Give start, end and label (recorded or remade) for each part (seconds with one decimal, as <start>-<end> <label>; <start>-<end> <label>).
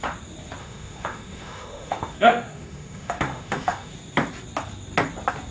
0.0-0.6 recorded; 0.6-3.9 remade; 3.9-5.5 recorded